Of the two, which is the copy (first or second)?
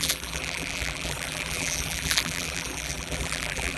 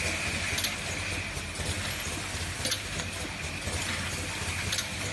first